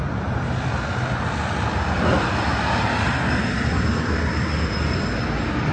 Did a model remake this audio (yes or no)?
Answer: no